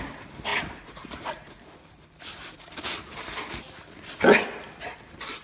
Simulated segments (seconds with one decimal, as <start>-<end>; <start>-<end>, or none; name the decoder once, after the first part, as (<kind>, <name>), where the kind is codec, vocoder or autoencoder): 0.5-3.5 (vocoder, BigVGAN v2)